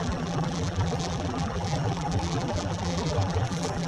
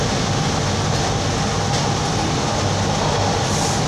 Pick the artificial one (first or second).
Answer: first